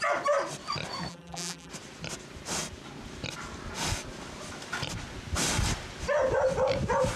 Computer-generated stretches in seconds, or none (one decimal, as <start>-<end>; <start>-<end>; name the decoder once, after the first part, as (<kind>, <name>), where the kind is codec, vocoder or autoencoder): 1.1-1.7 (vocoder, BigVGAN v2)